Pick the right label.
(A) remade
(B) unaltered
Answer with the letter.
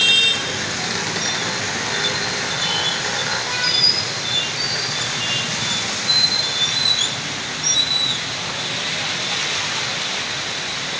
B